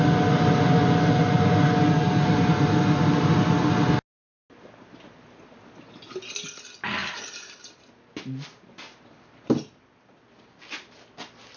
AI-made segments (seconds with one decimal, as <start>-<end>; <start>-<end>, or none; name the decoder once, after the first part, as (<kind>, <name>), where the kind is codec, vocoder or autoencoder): none

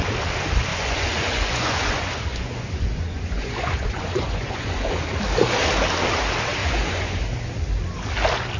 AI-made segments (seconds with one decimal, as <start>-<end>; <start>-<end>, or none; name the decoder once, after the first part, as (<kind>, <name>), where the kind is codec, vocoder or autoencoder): 0.7-5.0 (vocoder, Vocos); 6.6-7.2